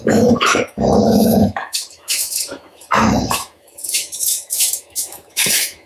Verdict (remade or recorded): remade